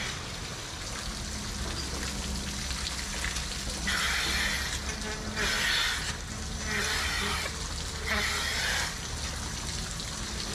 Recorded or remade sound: recorded